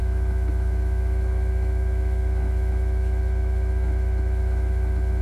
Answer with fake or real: fake